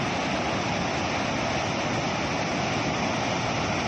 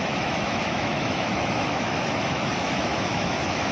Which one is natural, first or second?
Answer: first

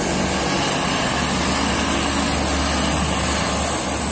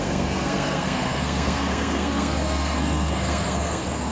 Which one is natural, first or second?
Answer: first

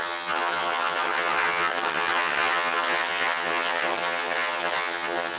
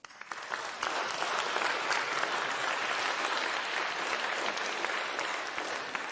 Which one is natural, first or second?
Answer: second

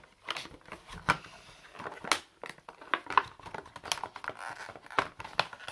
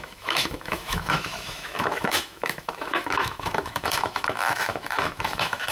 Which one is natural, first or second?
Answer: first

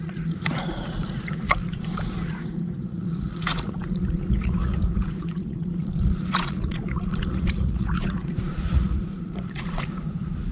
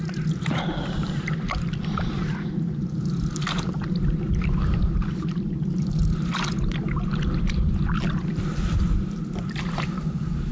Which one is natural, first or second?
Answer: second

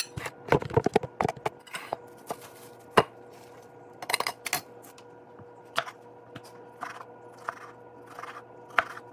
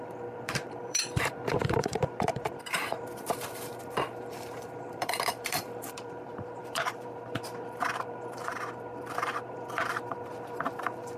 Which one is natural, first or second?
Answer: first